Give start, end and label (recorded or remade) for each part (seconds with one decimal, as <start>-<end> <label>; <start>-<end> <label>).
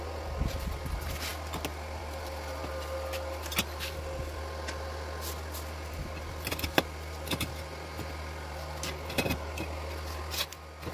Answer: 0.0-10.9 recorded